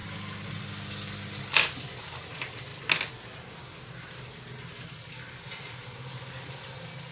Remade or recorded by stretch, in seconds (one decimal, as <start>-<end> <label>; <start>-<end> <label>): 0.0-7.1 recorded